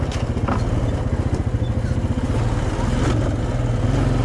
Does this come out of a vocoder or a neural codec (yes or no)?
no